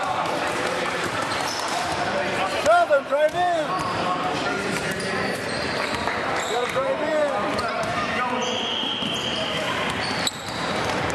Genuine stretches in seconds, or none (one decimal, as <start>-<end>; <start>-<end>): 7.2-8.8